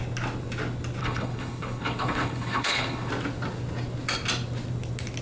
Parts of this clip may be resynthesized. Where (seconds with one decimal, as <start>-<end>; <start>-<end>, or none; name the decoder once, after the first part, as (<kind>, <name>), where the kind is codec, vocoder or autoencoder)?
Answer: 1.0-3.1 (codec, HILCodec)